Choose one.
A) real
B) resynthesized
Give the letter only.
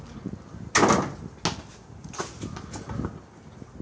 A